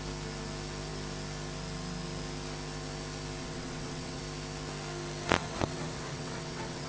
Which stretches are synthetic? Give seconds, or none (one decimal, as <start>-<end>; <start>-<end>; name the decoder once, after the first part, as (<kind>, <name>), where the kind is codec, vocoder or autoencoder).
3.4-4.2 (vocoder, WaveNeXt); 5.4-6.9